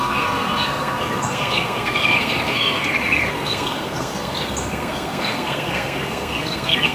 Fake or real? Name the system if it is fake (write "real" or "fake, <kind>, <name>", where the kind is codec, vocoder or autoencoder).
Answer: fake, codec, SNAC